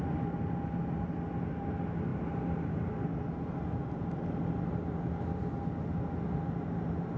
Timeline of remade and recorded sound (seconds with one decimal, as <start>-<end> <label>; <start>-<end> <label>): 0.0-7.2 recorded